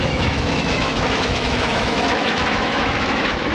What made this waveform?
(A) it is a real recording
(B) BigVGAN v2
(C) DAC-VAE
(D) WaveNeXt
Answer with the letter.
C